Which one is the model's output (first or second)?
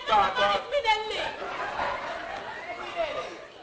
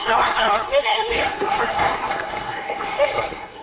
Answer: second